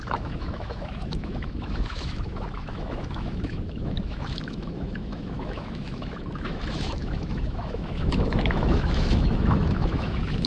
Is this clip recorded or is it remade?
remade